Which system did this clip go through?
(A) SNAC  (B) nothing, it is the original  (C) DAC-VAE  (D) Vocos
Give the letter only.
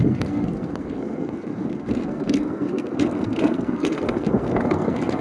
A